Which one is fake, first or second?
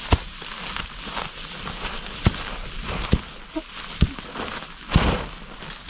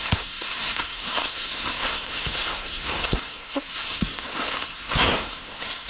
second